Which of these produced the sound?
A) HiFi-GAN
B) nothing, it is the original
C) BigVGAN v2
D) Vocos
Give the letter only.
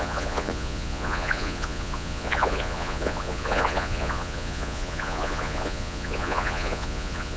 D